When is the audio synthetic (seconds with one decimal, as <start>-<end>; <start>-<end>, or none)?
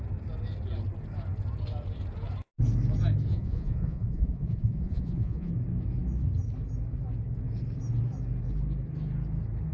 3.3-5.5